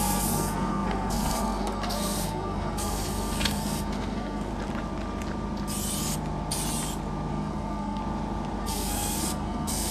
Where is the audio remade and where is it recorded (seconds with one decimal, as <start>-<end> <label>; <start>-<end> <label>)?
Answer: 0.0-4.5 remade; 4.5-7.3 recorded; 7.3-8.0 remade; 8.0-8.6 recorded; 8.6-9.9 remade